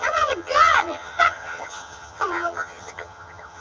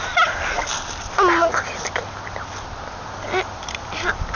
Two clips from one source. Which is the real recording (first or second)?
second